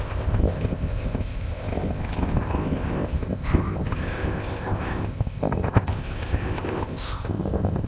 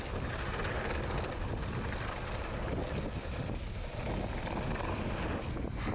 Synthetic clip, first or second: first